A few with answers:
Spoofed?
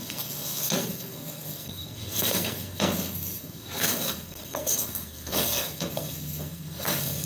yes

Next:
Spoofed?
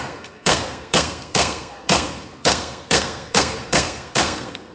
yes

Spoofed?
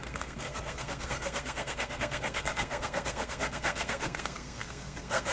yes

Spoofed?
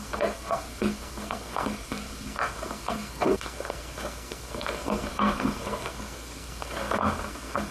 yes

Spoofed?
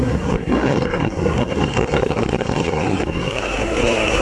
yes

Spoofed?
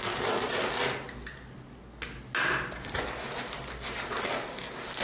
no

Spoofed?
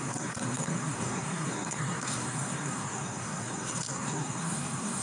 yes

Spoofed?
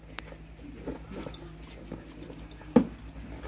no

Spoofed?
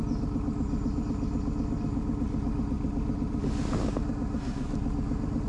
no